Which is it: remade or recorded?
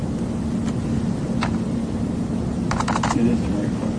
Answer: recorded